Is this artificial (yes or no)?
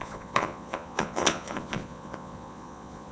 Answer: yes